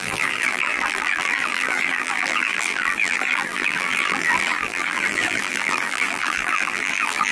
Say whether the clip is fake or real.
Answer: fake